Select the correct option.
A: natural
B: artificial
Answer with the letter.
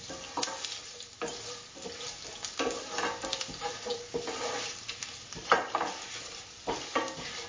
B